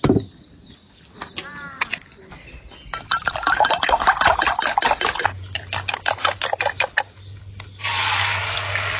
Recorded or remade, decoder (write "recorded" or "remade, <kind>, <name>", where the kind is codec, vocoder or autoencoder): recorded